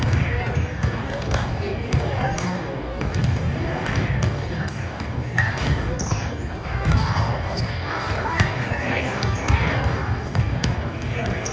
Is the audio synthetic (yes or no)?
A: yes